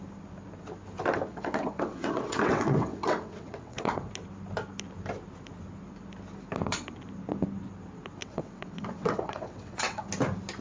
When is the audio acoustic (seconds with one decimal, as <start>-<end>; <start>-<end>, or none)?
0.0-1.3; 4.1-8.2; 10.1-10.6